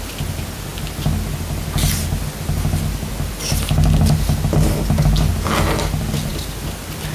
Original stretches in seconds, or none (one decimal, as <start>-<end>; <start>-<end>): 0.0-7.1